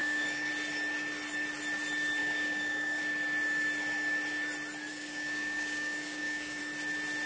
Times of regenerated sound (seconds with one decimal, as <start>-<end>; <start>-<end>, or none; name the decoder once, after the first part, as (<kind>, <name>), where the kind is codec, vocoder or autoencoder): 0.0-0.5 (codec, DAC); 2.2-3.0; 4.9-6.6